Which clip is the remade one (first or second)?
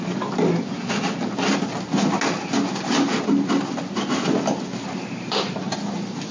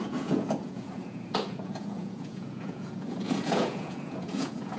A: second